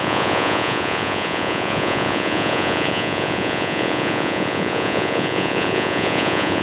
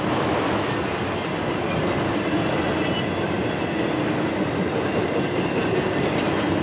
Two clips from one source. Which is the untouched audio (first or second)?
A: second